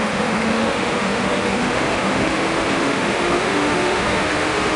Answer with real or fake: fake